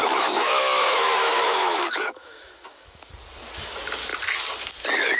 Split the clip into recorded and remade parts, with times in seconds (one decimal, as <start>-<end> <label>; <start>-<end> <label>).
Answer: 0.0-3.1 remade; 3.1-5.2 recorded